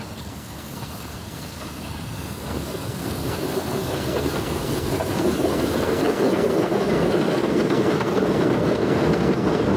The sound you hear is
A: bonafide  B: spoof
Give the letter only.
B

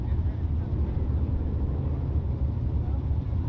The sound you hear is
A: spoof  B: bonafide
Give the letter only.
B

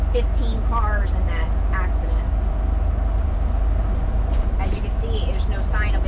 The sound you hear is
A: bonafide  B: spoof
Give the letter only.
A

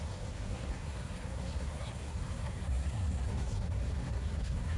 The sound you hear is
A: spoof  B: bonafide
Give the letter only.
A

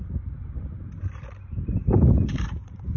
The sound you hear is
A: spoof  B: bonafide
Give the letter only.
A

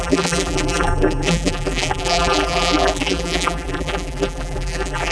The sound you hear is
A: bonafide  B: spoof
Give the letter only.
B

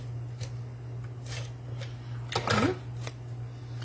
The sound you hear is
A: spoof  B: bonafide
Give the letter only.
B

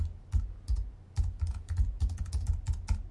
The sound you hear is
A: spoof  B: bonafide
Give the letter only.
B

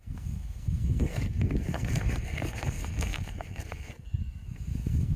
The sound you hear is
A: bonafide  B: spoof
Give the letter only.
B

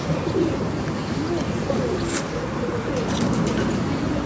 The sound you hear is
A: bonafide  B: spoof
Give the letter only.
A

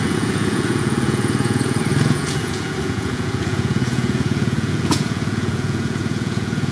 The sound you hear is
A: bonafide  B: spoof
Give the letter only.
B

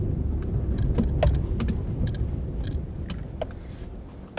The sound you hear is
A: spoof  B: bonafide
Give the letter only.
B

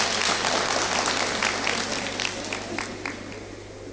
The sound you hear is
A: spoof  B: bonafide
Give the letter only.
B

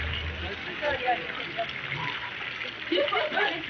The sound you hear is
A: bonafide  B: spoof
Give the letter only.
A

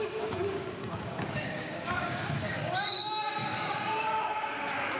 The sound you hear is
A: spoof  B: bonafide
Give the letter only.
A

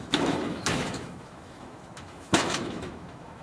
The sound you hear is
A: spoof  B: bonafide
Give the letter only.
A